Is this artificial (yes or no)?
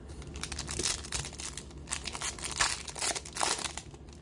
no